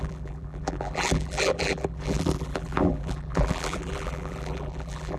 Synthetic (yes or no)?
yes